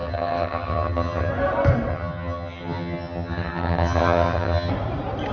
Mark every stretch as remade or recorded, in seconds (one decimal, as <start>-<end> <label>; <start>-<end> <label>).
0.0-1.3 remade; 1.3-1.9 recorded; 1.9-4.7 remade; 4.7-5.3 recorded

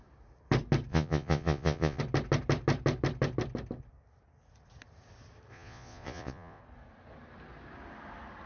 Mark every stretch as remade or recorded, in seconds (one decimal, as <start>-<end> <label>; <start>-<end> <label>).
0.0-0.9 recorded; 0.9-2.0 remade; 2.0-5.5 recorded; 5.5-6.6 remade; 6.6-8.5 recorded

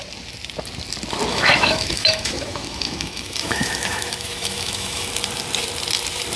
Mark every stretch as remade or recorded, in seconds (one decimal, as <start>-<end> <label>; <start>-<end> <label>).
0.0-1.3 recorded; 1.3-5.1 remade; 5.1-6.4 recorded